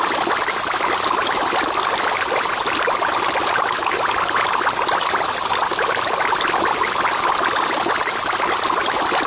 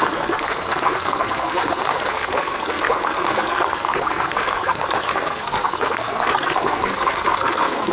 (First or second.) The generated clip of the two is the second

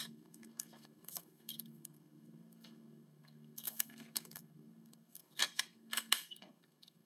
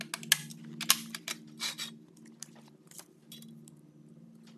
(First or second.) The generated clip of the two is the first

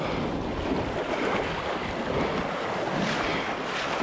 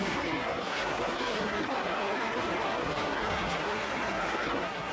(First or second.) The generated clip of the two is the second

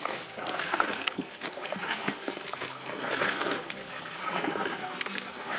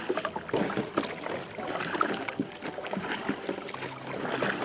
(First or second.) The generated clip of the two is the first